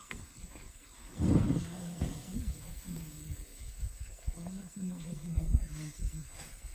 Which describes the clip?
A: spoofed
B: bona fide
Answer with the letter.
A